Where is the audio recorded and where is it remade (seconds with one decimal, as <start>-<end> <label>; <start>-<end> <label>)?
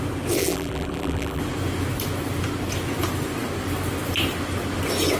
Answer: 0.0-0.4 recorded; 0.4-1.4 remade; 1.4-5.2 recorded